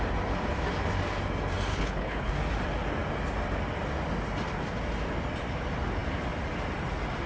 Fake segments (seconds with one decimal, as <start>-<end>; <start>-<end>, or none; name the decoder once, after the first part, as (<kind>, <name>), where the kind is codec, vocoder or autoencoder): 1.7-2.3 (codec, HILCodec)